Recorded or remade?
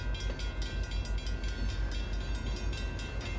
recorded